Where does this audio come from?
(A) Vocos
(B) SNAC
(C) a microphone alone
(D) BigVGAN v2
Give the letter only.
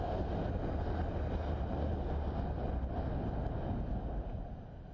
C